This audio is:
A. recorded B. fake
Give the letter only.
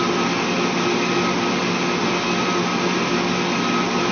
A